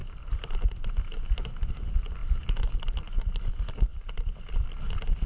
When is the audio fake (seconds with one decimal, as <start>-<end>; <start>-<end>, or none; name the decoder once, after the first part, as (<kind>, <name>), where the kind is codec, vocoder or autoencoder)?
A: none